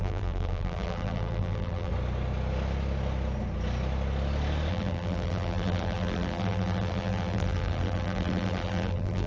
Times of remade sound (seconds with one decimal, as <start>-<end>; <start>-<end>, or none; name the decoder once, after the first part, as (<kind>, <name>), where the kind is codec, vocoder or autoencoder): 0.0-1.9 (vocoder, BigVGAN v2); 4.7-9.3